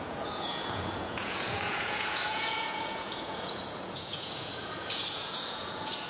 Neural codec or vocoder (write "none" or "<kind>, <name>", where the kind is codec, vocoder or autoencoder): vocoder, Vocos